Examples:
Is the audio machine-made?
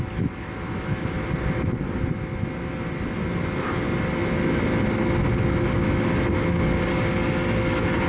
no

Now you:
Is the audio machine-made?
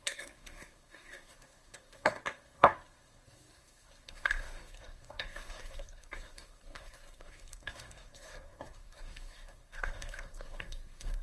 yes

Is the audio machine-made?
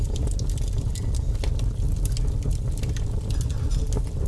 no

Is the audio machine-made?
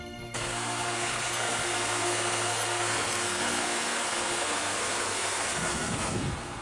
yes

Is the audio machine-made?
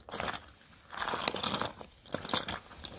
no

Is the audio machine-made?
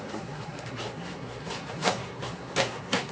yes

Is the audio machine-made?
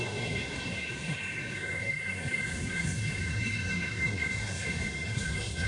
yes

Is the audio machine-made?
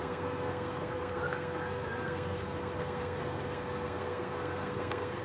yes